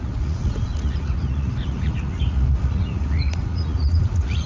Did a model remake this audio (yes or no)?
yes